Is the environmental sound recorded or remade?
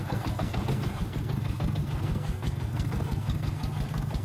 remade